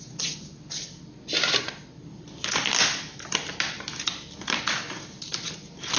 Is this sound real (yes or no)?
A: yes